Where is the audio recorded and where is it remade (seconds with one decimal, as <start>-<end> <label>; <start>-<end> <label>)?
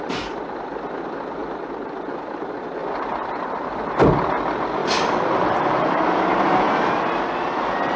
0.0-4.8 recorded; 4.8-5.9 remade; 5.9-8.0 recorded